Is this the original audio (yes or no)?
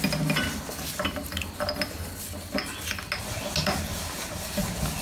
yes